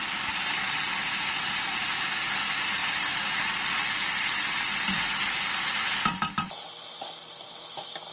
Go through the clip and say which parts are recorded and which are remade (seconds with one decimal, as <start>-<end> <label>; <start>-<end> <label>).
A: 0.0-8.1 recorded